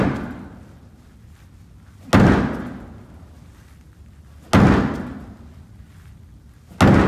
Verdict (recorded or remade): recorded